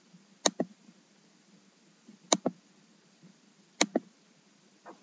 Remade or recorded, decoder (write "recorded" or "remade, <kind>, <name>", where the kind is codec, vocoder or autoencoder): recorded